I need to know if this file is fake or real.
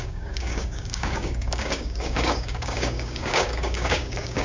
fake